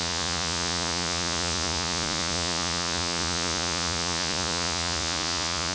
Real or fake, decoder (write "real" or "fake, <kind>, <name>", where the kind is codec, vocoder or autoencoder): fake, vocoder, Vocos